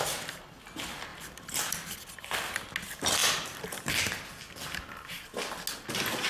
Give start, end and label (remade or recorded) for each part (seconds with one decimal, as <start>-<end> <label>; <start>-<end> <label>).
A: 0.0-1.1 recorded; 1.1-2.1 remade; 2.1-3.2 recorded; 3.2-3.9 remade; 3.9-6.3 recorded